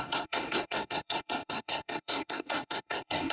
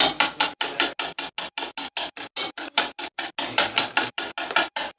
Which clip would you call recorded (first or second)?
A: second